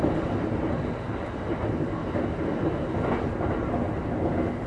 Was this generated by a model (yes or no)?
no